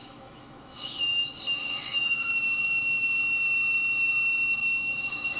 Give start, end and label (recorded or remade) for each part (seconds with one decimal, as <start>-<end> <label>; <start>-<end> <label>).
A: 0.0-3.2 remade; 3.2-4.6 recorded; 4.6-5.4 remade